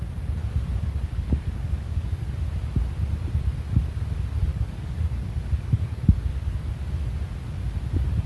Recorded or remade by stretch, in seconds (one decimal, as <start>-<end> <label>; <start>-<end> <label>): 0.0-0.7 recorded; 0.7-2.3 remade; 2.3-4.5 recorded; 4.5-6.7 remade; 6.7-8.3 recorded